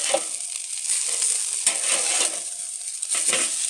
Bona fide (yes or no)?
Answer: yes